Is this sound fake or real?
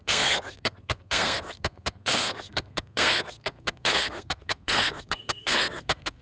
fake